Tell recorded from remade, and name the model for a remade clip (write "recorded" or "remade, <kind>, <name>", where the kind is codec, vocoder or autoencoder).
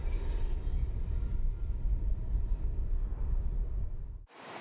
recorded